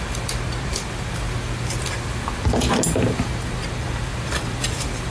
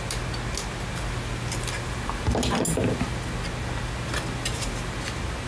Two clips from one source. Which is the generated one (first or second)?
first